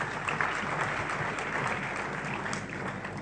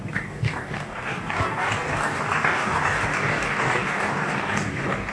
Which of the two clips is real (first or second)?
first